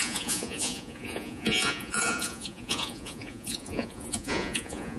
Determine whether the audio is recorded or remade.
remade